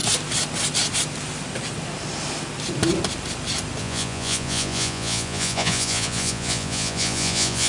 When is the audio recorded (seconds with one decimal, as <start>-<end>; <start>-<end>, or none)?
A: 0.0-3.8